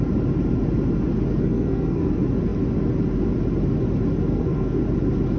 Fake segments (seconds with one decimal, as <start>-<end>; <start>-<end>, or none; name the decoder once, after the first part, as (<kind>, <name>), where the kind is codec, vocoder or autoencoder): 1.3-2.1 (codec, SNAC); 4.3-4.8